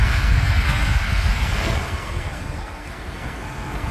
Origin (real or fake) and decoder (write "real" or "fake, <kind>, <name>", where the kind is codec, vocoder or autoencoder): fake, codec, SNAC